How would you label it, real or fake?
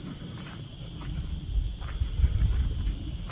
real